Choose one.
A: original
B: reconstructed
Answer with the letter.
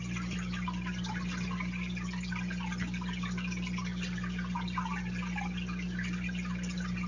A